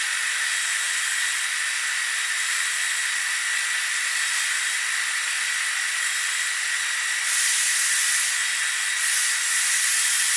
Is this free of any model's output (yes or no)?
yes